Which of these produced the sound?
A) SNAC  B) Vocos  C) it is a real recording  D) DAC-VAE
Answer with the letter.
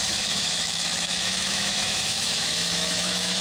D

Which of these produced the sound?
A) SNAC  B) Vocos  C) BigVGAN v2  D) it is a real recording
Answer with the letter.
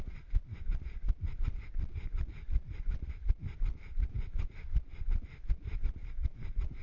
D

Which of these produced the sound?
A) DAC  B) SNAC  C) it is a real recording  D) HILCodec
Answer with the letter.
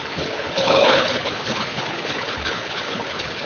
D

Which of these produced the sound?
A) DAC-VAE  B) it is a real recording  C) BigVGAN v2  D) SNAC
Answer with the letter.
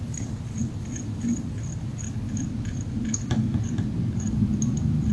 B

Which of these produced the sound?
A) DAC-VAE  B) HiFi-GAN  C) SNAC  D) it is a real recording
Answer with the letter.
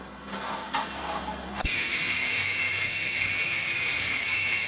C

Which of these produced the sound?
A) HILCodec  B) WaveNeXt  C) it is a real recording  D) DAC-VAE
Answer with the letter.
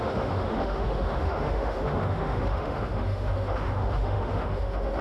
D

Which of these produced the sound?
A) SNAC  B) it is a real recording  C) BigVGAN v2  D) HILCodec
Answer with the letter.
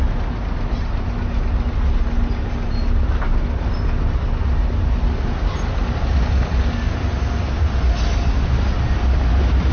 B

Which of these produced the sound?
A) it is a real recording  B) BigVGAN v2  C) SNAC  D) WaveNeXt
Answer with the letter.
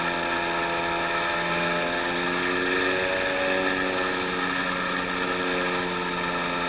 A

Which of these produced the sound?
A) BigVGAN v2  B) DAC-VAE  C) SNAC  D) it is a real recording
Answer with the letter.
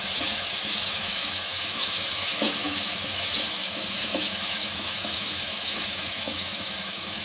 B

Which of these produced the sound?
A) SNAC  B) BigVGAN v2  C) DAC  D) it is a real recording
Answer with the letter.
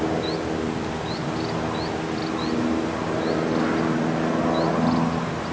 D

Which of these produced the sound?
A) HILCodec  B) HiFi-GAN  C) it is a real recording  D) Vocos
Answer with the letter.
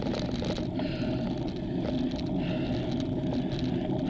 C